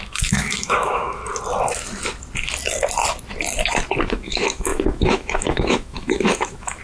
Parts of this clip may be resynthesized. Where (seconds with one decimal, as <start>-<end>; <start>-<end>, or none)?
0.0-1.2; 4.1-6.8

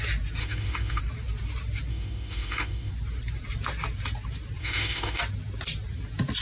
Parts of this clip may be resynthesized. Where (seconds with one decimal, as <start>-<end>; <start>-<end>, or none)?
0.4-1.0; 1.9-2.9; 4.6-5.2

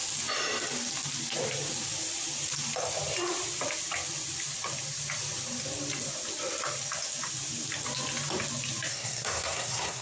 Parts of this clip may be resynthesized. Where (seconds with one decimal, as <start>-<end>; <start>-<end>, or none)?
8.9-10.0

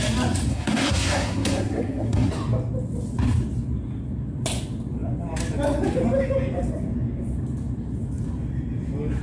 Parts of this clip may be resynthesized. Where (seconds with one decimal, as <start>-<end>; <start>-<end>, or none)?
0.5-2.3

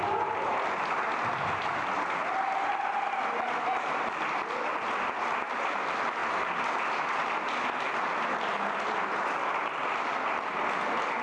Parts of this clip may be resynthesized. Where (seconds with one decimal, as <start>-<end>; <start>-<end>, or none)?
none

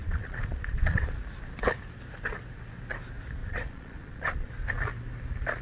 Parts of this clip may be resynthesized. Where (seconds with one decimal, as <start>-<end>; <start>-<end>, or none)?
0.0-1.2; 3.4-4.5